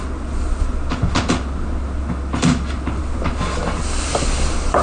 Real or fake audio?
real